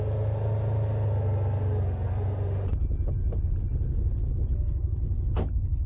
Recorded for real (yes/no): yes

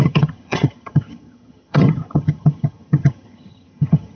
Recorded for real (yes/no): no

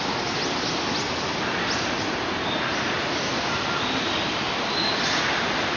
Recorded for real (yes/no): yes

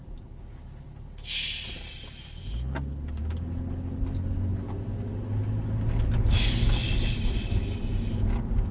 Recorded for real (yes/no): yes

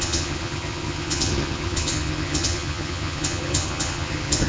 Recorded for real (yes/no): no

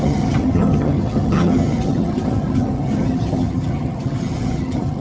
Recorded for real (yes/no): no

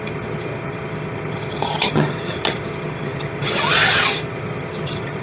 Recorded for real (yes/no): no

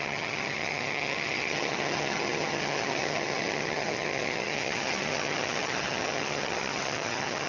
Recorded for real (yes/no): no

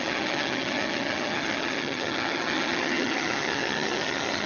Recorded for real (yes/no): no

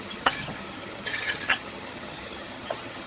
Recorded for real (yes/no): no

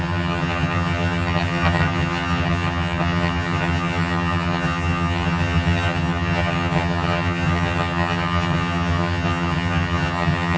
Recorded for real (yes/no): no